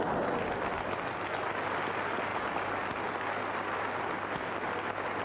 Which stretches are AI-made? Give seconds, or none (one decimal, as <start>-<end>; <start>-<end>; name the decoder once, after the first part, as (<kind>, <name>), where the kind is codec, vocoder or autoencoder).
none